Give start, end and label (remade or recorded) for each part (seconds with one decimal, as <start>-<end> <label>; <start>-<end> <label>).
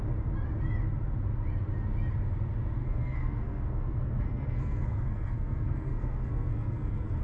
0.0-2.8 recorded; 2.8-7.2 remade